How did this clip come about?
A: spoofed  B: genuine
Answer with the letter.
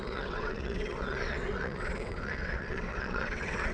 A